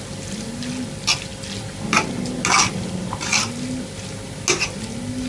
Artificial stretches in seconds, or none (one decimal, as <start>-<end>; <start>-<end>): none